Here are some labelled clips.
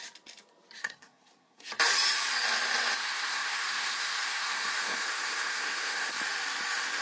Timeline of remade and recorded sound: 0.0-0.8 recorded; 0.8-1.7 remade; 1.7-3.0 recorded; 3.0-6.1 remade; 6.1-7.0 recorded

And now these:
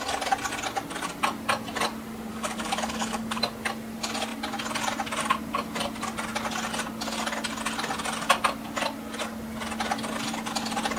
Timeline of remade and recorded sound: 0.0-2.3 recorded; 2.3-3.4 remade; 3.4-11.0 recorded